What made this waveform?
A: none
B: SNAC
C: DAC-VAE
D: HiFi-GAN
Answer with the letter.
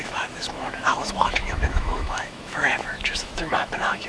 C